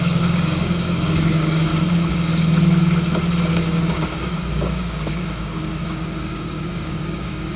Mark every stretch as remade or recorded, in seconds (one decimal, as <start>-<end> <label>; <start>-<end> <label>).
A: 0.0-1.7 remade; 1.7-3.5 recorded; 3.5-7.6 remade